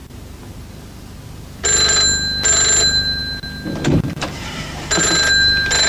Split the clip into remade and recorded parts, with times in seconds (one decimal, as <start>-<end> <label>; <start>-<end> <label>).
0.0-5.9 recorded